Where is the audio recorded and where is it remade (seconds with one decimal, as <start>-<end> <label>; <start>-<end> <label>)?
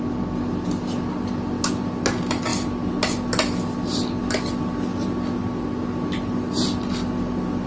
0.0-7.7 recorded